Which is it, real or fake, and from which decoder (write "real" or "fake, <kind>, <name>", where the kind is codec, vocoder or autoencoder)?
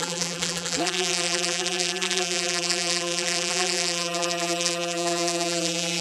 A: fake, vocoder, BigVGAN v2